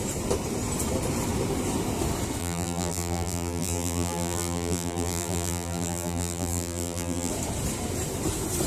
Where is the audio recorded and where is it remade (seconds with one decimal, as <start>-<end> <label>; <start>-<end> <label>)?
0.0-2.4 recorded; 2.4-7.3 remade; 7.3-8.7 recorded